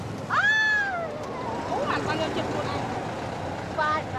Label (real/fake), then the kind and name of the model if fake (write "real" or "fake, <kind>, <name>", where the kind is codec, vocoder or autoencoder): real